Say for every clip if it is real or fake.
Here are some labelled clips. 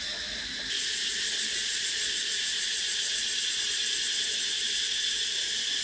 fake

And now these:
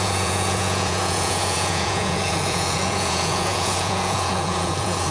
fake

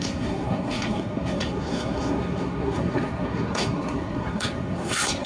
fake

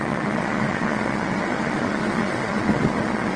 fake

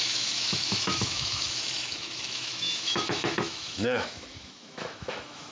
fake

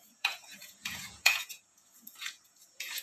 fake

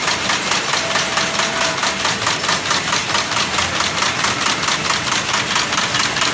real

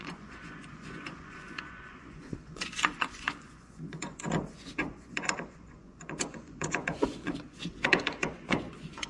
fake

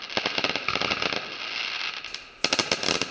real